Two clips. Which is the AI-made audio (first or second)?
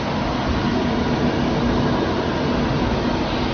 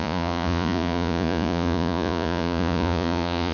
second